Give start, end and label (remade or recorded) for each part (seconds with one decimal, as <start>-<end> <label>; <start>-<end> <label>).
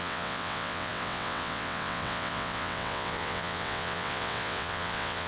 0.0-5.3 remade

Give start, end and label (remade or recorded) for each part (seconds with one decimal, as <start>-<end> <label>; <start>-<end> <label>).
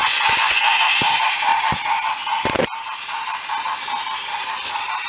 0.0-0.8 remade; 0.8-5.1 recorded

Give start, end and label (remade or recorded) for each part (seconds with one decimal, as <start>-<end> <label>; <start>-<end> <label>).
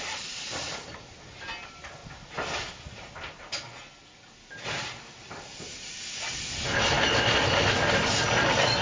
0.0-8.8 recorded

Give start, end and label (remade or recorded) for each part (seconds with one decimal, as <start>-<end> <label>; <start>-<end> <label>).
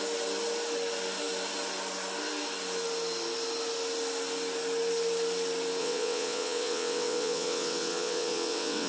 0.0-5.8 recorded; 5.8-8.9 remade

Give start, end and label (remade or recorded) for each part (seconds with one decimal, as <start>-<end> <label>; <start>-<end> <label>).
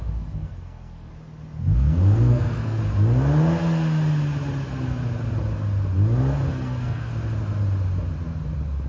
0.0-1.1 remade; 1.1-1.6 recorded; 1.6-2.8 remade; 2.8-6.5 recorded; 6.5-7.1 remade; 7.1-8.9 recorded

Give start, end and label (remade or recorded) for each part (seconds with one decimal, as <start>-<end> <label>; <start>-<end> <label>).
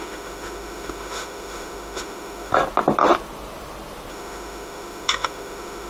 0.0-2.5 remade; 2.5-4.1 recorded; 4.1-5.9 remade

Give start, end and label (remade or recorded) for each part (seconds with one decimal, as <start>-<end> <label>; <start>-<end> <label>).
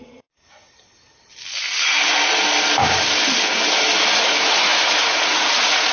0.0-0.6 remade; 0.6-4.1 recorded; 4.1-5.9 remade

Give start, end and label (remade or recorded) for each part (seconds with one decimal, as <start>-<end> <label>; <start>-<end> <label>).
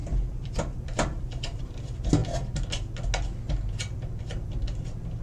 0.0-1.6 remade; 1.6-5.2 recorded